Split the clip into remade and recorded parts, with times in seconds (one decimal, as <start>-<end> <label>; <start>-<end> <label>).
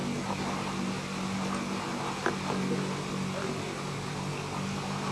0.0-5.1 recorded